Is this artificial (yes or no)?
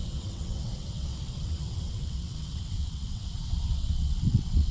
yes